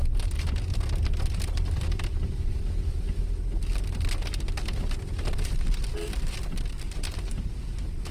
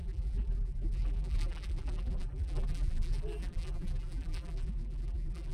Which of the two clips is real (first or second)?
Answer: first